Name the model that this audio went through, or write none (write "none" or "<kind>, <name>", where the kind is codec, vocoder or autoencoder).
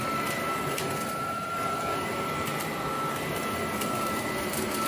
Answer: vocoder, BigVGAN v2